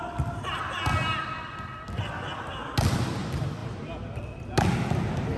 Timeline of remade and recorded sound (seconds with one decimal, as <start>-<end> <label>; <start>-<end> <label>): 0.0-5.4 recorded